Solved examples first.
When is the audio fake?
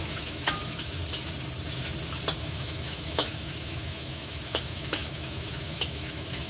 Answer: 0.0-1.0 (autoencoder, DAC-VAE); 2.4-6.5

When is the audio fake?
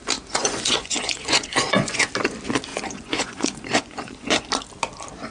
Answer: 0.4-2.1 (vocoder, Vocos); 2.7-4.5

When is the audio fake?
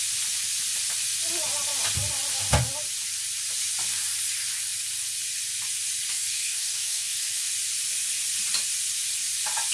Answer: 6.1-7.5 (codec, DAC)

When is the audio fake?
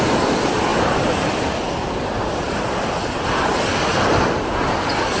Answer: none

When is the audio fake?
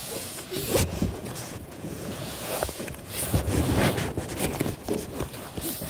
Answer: 0.0-3.4 (vocoder, Vocos)